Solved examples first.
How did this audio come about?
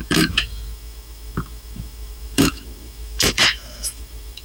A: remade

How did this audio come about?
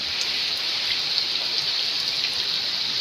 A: recorded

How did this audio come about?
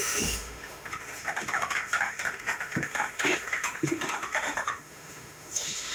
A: remade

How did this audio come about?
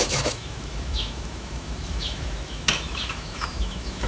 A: remade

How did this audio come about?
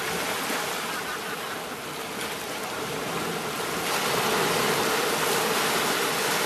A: recorded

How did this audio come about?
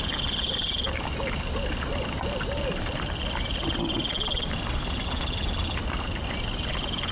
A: recorded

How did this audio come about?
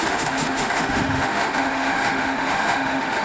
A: remade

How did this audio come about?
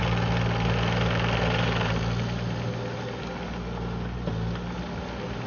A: recorded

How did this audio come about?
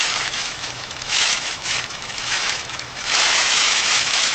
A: remade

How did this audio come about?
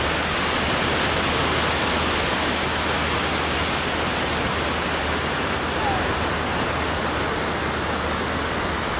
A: recorded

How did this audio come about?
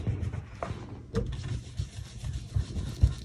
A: recorded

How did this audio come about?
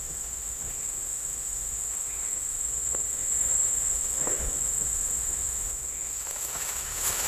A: remade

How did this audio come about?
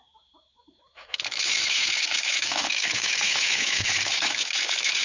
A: remade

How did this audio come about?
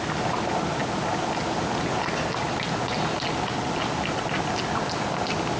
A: recorded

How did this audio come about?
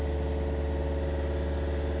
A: recorded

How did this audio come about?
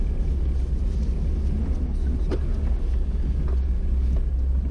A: recorded